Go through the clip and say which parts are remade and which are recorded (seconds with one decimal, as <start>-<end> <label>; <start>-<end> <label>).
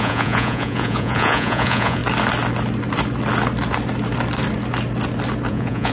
0.0-2.0 remade; 2.0-5.5 recorded; 5.5-5.9 remade